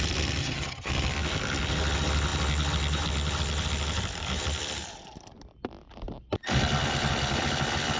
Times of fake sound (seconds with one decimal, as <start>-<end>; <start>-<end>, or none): 0.4-0.9